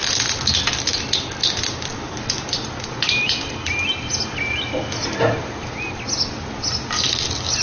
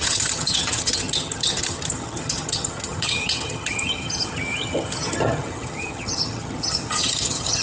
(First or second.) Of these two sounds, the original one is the first